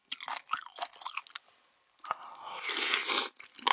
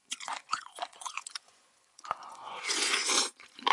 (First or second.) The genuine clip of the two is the first